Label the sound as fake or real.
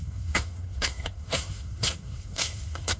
fake